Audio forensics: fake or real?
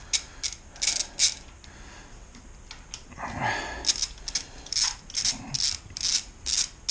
real